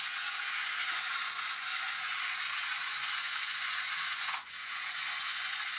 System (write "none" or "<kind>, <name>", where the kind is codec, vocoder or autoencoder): vocoder, Vocos